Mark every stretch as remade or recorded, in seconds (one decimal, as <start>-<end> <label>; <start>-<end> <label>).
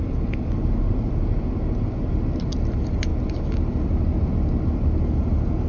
0.0-5.7 recorded